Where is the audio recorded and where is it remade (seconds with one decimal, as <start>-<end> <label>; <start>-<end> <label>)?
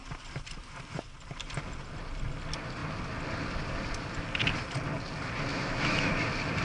0.0-5.5 recorded; 5.5-6.1 remade; 6.1-6.6 recorded